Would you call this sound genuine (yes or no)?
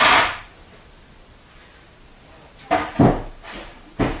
yes